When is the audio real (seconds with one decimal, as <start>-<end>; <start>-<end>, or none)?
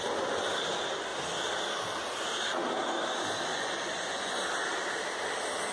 0.0-3.5; 4.4-5.7